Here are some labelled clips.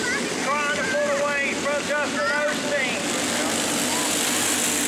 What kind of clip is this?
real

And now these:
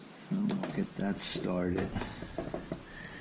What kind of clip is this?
real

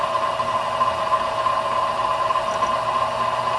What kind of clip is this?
real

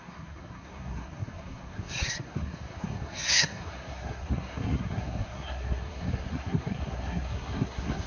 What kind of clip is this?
fake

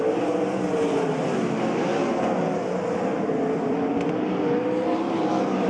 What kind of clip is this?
real